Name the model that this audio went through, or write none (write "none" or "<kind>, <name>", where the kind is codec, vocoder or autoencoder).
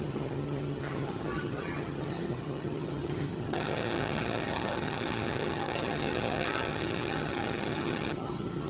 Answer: vocoder, HiFi-GAN